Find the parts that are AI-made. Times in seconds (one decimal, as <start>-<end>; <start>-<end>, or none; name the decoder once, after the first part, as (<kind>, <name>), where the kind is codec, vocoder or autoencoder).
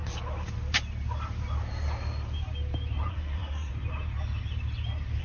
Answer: 3.1-3.7 (codec, SNAC)